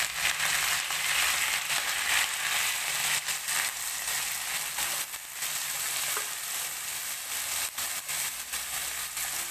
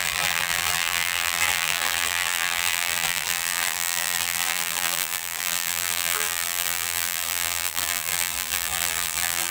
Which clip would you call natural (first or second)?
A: first